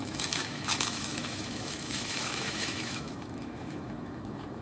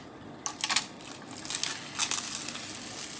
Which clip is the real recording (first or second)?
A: second